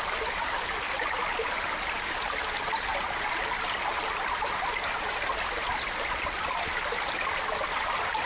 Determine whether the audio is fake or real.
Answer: real